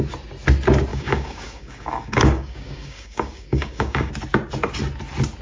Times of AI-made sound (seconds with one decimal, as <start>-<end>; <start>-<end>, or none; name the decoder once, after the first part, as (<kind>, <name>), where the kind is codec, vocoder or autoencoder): 0.9-4.1 (codec, DAC)